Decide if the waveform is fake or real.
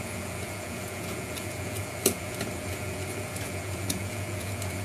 fake